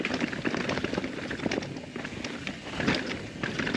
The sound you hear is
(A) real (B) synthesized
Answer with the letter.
A